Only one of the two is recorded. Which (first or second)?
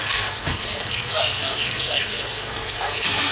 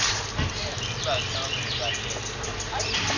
second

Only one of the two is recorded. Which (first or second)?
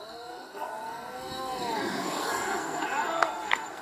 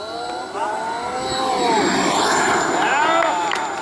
second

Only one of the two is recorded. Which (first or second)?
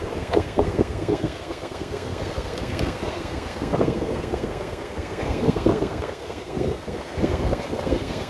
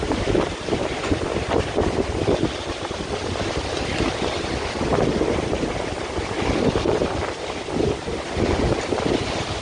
second